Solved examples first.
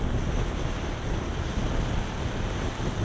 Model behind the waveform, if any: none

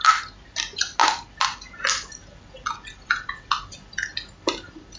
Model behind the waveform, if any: none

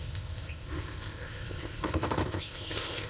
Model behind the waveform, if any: codec, ZipCodec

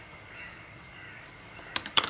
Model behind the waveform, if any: codec, DAC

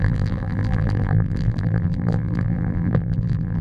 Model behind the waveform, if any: vocoder, BigVGAN v2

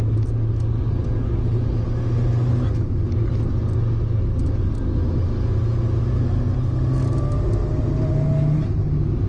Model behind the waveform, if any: none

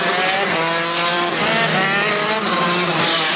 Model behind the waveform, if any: none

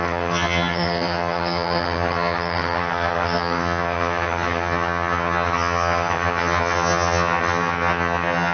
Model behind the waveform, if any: vocoder, HiFi-GAN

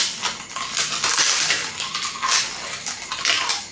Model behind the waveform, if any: none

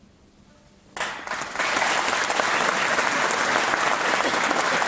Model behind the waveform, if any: none